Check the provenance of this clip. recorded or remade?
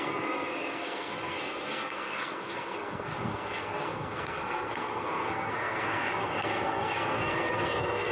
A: remade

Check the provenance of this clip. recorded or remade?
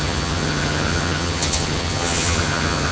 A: remade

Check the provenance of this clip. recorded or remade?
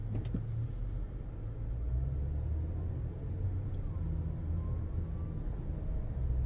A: recorded